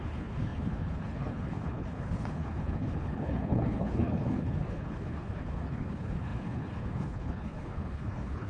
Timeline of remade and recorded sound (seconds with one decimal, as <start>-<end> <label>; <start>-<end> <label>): 0.0-8.5 remade